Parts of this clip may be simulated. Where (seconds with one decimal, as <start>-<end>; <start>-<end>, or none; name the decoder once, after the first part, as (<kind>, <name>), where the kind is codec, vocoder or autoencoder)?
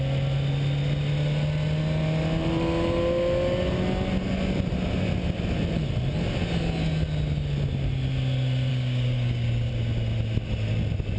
8.7-9.7 (codec, DAC)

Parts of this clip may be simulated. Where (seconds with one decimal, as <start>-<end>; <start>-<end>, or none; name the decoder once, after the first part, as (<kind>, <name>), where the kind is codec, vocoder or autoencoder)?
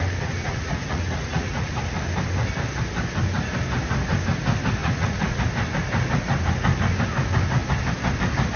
0.4-1.8 (vocoder, Vocos); 4.8-5.4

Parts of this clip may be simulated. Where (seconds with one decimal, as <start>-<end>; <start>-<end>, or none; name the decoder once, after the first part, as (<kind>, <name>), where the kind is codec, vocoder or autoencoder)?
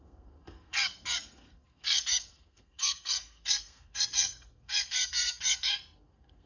0.0-6.5 (codec, SNAC)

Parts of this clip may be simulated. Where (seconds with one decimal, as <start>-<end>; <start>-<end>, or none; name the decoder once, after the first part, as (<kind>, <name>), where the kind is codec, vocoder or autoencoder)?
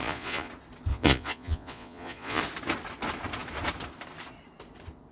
0.0-0.5 (vocoder, Vocos); 0.9-2.4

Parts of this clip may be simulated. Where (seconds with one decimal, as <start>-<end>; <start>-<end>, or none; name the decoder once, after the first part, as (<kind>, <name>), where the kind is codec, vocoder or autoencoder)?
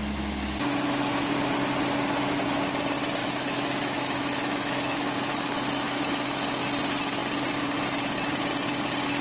3.2-6.6 (autoencoder, DAC-VAE)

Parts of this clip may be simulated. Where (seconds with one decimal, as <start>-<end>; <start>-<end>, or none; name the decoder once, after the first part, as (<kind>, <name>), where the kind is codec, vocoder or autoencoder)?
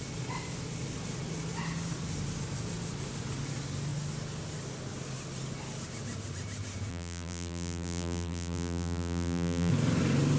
6.9-9.7 (vocoder, BigVGAN v2)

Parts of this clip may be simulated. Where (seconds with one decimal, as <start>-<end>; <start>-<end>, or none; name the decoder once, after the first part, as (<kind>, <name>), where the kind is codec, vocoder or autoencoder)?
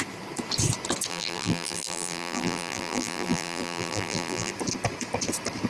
1.1-4.5 (vocoder, BigVGAN v2)